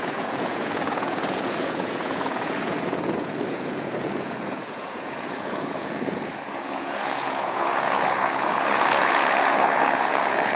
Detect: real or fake fake